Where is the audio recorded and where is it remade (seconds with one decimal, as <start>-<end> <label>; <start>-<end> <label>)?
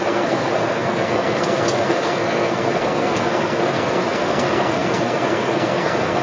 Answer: 0.0-6.2 remade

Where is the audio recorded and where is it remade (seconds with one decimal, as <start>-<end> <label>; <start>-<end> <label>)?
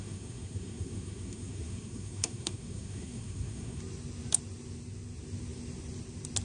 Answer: 0.0-3.8 remade; 3.8-6.4 recorded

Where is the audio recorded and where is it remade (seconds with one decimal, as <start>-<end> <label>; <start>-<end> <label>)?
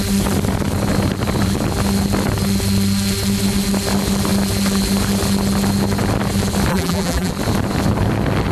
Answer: 0.0-6.7 recorded; 6.7-7.3 remade; 7.3-8.5 recorded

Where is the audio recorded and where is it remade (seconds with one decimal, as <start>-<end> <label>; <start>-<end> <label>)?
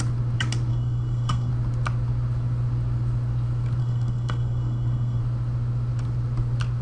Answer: 0.0-0.7 recorded; 0.7-1.5 remade; 1.5-3.8 recorded; 3.8-5.2 remade; 5.2-6.8 recorded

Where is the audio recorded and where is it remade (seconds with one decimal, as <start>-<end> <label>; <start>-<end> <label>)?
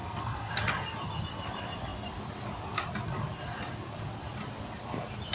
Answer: 0.0-0.5 remade; 0.5-5.3 recorded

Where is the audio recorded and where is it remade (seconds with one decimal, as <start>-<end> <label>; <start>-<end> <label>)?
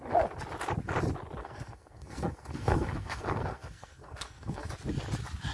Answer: 0.0-1.4 recorded; 1.4-4.7 remade; 4.7-5.5 recorded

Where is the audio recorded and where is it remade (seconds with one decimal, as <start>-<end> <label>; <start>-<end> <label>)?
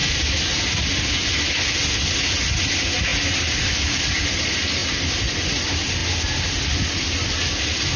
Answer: 0.0-8.0 recorded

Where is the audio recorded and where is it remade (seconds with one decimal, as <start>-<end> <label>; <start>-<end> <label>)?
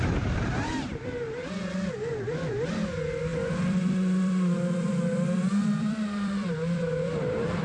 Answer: 0.0-1.4 remade; 1.4-2.1 recorded; 2.1-7.6 remade